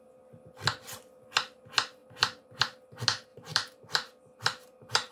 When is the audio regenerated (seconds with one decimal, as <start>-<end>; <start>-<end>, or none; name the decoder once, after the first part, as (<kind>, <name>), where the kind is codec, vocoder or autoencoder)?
2.0-2.6 (vocoder, BigVGAN v2); 3.3-5.1